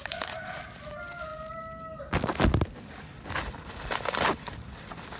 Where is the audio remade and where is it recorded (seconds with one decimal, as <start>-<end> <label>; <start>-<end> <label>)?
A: 0.0-0.7 remade; 0.7-5.2 recorded